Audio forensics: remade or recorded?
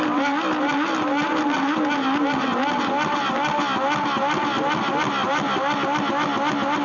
recorded